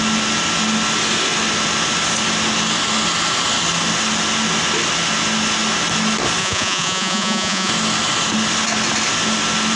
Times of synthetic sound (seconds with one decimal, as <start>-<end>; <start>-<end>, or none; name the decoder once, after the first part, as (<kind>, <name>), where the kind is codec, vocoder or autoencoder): 6.4-7.7 (vocoder, Vocos)